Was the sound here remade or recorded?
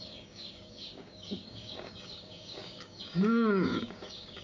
remade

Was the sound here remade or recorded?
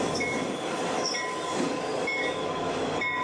remade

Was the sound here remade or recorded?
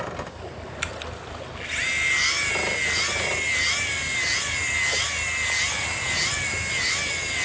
recorded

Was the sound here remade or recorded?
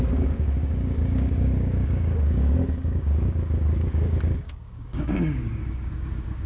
remade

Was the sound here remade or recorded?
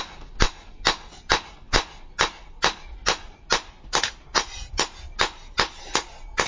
recorded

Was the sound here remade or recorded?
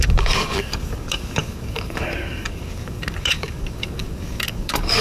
remade